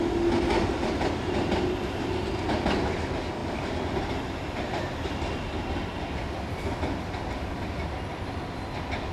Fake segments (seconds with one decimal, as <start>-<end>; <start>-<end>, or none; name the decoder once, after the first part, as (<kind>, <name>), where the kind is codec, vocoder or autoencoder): none